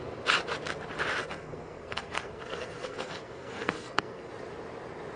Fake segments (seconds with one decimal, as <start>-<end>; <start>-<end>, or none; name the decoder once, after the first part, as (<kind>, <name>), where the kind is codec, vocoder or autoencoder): 1.2-4.3 (codec, SNAC)